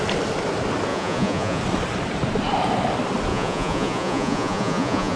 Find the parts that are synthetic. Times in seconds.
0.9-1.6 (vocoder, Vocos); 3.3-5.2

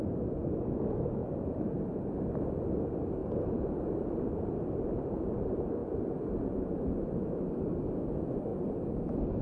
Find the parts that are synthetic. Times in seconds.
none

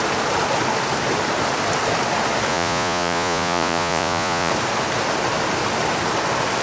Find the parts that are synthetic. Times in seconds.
2.5-4.5 (vocoder, Vocos)

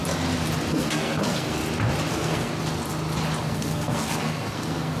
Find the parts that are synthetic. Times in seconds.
0.7-1.6 (codec, SNAC); 2.1-2.5; 3.4-5.0